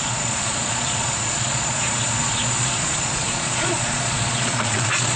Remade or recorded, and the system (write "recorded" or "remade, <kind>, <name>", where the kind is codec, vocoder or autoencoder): remade, vocoder, Vocos